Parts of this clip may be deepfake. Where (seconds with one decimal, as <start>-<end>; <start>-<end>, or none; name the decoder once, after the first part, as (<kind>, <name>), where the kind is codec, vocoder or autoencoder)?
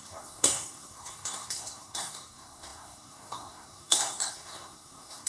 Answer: 0.0-5.3 (codec, SNAC)